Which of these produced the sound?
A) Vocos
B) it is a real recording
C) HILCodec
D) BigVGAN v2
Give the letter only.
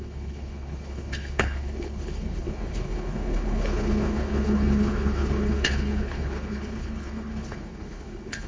C